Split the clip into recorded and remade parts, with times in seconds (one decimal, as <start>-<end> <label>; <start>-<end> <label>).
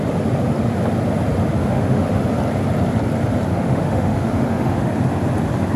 0.0-1.6 recorded; 1.6-2.2 remade; 2.2-3.5 recorded; 3.5-4.9 remade; 4.9-5.8 recorded